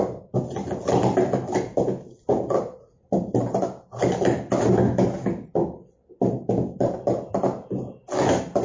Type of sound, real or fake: real